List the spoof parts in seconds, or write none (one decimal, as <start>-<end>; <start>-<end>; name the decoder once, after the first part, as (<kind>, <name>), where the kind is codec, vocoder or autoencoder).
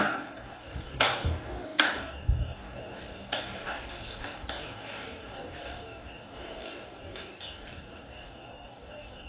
0.0-9.3 (codec, DAC)